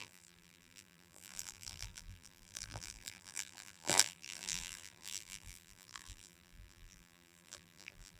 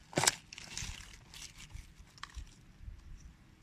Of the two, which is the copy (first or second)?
first